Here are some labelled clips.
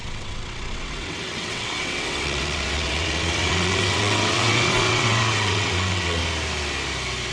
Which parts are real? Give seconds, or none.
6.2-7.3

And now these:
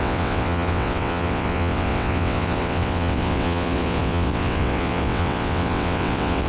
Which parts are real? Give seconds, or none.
none

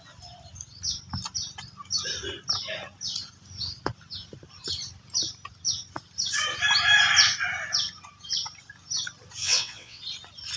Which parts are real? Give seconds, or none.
0.0-9.4; 10.0-10.6

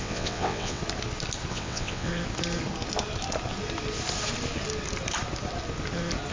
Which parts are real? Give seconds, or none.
0.8-1.5; 2.1-6.3

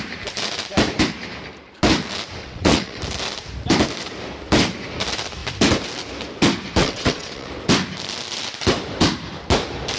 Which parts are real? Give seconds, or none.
0.0-2.4; 3.0-6.8; 7.5-10.0

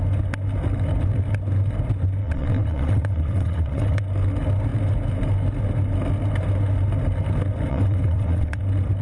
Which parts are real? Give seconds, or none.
0.0-2.2; 4.0-7.7; 8.6-9.0